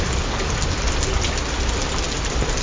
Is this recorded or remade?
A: recorded